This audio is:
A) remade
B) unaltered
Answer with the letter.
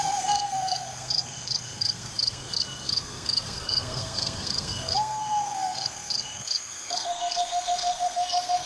A